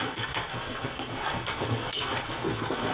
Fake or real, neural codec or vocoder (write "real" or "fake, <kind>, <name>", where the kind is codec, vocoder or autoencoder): fake, codec, SNAC